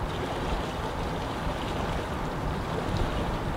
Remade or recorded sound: recorded